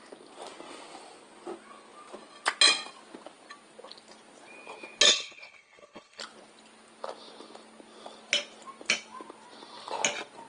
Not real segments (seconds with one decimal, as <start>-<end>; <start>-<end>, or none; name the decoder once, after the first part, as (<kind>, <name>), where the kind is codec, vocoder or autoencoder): 5.1-6.2 (codec, HILCodec)